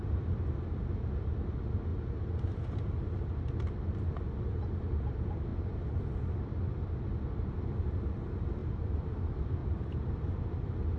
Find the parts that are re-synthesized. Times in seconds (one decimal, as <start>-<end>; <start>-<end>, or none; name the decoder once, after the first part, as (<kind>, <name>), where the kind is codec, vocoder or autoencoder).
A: 8.6-9.2 (vocoder, BigVGAN v2); 9.6-10.1